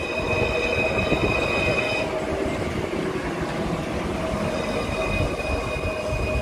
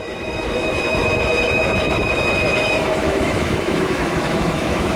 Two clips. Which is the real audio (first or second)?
first